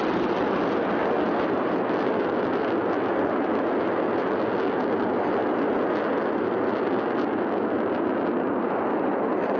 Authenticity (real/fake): real